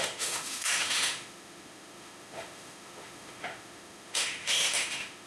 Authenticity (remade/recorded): remade